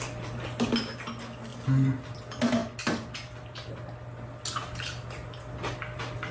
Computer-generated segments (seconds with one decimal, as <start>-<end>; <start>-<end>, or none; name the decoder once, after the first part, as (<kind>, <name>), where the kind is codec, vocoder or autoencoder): none